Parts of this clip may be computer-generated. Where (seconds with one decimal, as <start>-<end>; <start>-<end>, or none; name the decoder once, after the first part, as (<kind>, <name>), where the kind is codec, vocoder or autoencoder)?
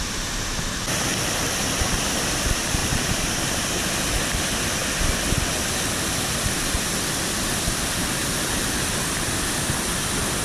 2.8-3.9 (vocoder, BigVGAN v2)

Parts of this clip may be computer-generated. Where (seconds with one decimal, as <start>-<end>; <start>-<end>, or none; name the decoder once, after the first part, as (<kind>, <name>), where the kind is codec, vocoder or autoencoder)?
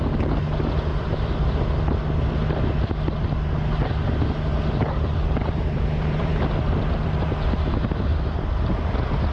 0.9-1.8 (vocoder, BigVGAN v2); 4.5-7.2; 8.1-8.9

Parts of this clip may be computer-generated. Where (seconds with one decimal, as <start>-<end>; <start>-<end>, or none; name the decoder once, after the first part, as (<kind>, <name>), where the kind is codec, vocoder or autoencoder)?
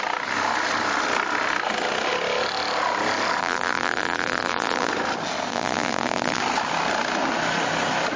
3.4-4.9 (vocoder, BigVGAN v2); 5.5-6.4